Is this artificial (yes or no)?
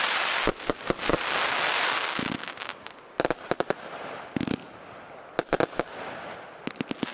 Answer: no